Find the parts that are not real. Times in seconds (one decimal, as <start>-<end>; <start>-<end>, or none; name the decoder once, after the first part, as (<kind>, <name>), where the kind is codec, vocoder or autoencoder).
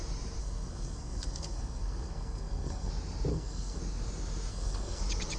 0.4-2.9 (codec, SNAC); 3.3-3.8; 4.5-5.0